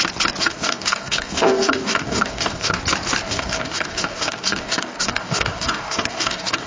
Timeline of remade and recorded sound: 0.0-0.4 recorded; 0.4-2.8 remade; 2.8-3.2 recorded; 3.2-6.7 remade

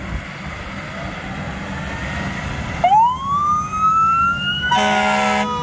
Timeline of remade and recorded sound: 0.0-3.9 recorded; 3.9-4.7 remade; 4.7-5.6 recorded

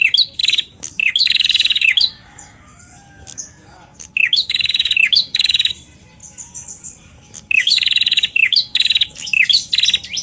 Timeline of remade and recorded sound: 0.0-0.4 recorded; 0.4-5.7 remade; 5.7-6.2 recorded; 6.2-9.7 remade; 9.7-10.2 recorded

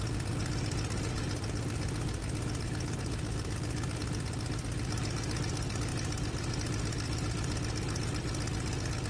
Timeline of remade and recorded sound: 0.0-9.1 recorded

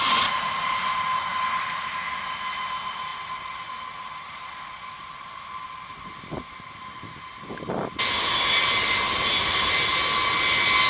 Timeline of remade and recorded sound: 0.0-10.9 recorded

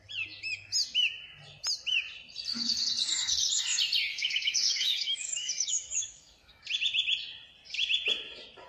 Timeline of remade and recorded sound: 0.0-2.5 recorded; 2.5-3.6 remade; 3.6-4.1 recorded; 4.1-6.6 remade; 6.6-8.7 recorded

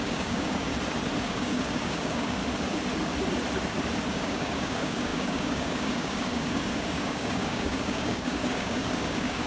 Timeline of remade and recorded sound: 0.0-0.7 remade; 0.7-1.2 recorded; 1.2-2.4 remade; 2.4-4.1 recorded; 4.1-9.5 remade

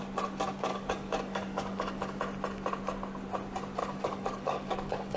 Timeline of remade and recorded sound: 0.0-0.7 recorded; 0.7-2.2 remade; 2.2-3.8 recorded; 3.8-5.2 remade